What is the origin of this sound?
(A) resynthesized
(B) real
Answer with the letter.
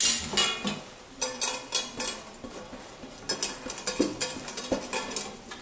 B